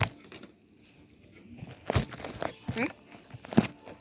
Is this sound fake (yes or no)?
no